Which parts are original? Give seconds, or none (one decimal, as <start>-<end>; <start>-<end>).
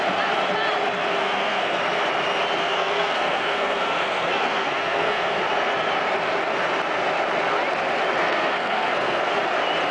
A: 0.0-1.2; 1.8-2.6; 5.4-8.2; 9.2-9.9